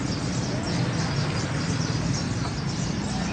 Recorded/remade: recorded